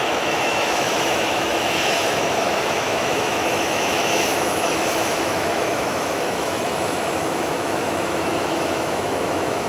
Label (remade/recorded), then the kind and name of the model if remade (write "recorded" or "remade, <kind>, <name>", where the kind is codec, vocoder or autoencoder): remade, autoencoder, DAC-VAE